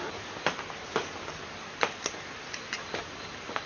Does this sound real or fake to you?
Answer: real